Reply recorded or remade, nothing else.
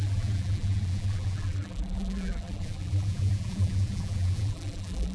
remade